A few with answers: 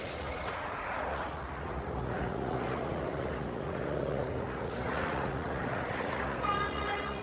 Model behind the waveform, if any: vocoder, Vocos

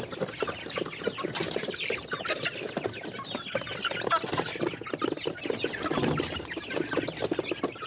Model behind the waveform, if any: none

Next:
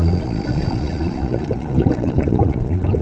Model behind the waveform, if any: vocoder, Vocos